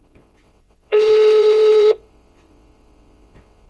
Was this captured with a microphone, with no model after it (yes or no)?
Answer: no